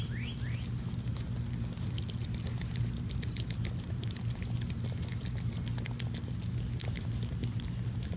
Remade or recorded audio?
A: recorded